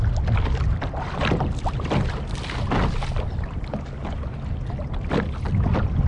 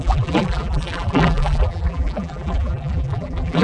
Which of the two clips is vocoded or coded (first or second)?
second